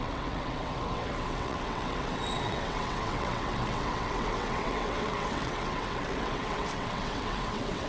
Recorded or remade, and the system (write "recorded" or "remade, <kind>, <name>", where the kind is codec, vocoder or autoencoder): remade, vocoder, WaveNeXt